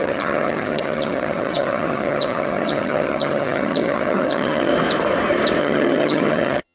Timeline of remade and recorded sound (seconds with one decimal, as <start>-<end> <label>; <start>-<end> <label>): 0.0-4.7 remade; 4.7-5.6 recorded; 5.6-6.7 remade